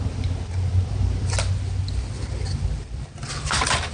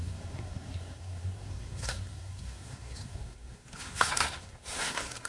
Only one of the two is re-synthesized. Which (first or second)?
second